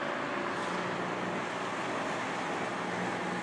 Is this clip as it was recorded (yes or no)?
yes